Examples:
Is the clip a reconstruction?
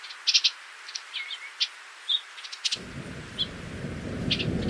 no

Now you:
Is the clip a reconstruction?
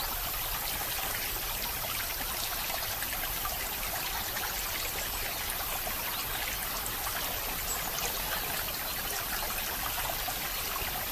no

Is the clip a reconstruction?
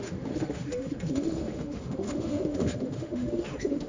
yes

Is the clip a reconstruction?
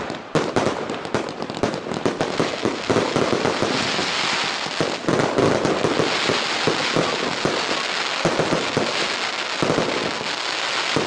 no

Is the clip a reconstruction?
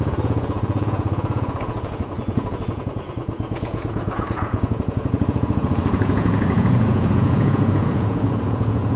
yes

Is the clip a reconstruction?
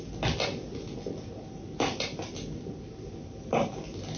no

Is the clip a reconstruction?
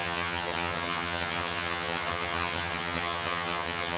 yes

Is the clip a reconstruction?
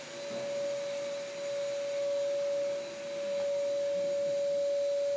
no